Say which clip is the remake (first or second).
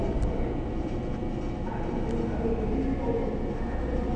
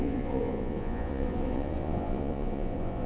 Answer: second